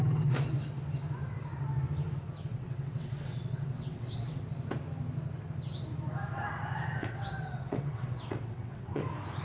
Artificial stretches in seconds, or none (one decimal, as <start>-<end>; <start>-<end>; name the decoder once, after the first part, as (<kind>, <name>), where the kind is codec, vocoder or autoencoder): 2.5-4.4 (vocoder, WaveNeXt); 7.0-9.0